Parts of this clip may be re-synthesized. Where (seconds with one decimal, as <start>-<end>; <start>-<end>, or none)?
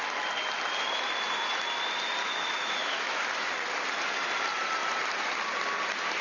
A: 2.2-3.5